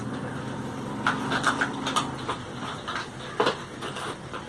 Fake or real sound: real